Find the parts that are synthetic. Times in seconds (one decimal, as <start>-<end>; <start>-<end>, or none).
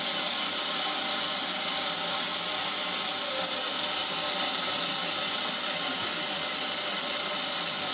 none